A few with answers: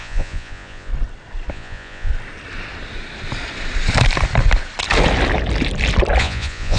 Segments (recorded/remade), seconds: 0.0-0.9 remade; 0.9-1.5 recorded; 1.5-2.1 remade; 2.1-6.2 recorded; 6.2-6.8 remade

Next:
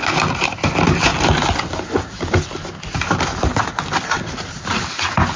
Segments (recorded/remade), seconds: 0.0-5.4 recorded

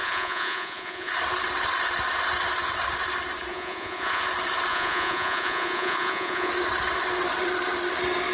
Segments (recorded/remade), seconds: 0.0-1.1 remade; 1.1-3.5 recorded; 3.5-4.2 remade; 4.2-4.7 recorded; 4.7-6.5 remade; 6.5-8.3 recorded

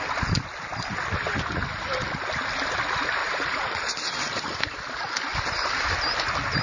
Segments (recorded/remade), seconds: 0.0-3.2 recorded; 3.2-3.8 remade; 3.8-6.6 recorded